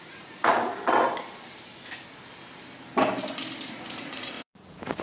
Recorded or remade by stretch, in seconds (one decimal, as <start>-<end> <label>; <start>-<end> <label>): 0.0-0.7 remade; 0.7-3.7 recorded; 3.7-5.0 remade